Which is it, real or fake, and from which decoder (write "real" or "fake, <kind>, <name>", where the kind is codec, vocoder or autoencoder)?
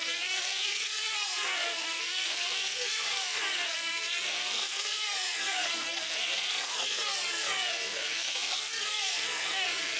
fake, codec, SNAC